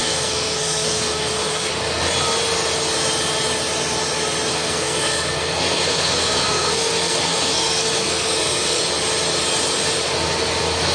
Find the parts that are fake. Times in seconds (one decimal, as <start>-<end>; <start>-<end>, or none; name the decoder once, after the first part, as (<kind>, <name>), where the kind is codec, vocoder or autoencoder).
0.0-1.7 (codec, SNAC); 4.5-8.8